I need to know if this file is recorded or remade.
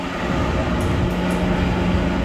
recorded